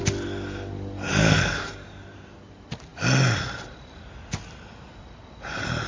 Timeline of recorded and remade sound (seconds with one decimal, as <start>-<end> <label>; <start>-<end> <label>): 0.0-1.2 recorded; 1.2-2.0 remade; 2.0-5.9 recorded